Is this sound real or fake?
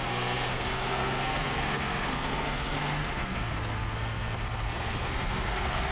fake